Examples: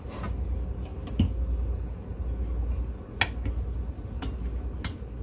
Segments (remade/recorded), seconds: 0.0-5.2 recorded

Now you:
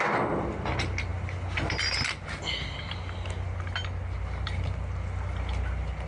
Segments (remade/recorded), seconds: 0.0-6.1 recorded

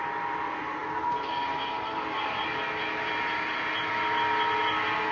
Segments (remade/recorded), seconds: 0.0-5.1 recorded

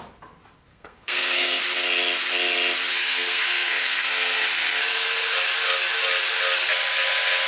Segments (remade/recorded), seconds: 0.0-0.7 recorded; 0.7-1.6 remade; 1.6-2.9 recorded; 2.9-4.4 remade; 4.4-7.5 recorded

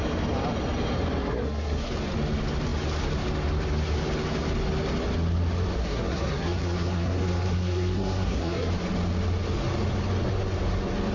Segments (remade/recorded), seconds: 0.0-1.3 recorded; 1.3-1.9 remade; 1.9-5.8 recorded; 5.8-8.7 remade; 8.7-11.1 recorded

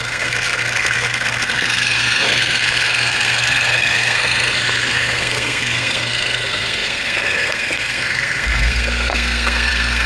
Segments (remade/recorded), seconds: 0.0-10.1 remade

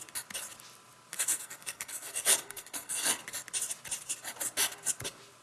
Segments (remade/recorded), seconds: 0.0-1.1 recorded; 1.1-3.2 remade; 3.2-5.4 recorded

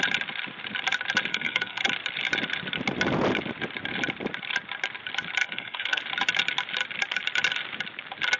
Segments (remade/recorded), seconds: 0.0-1.3 recorded; 1.3-1.8 remade; 1.8-5.4 recorded; 5.4-6.0 remade; 6.0-8.4 recorded